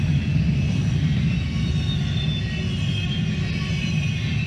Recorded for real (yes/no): yes